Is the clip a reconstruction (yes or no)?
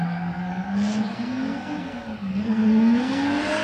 yes